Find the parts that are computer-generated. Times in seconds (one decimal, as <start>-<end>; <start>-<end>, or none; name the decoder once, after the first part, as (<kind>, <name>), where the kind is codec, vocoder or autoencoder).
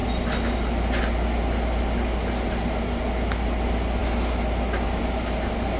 none